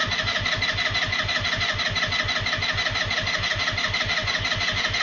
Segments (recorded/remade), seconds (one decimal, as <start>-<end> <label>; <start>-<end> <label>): 0.0-5.0 recorded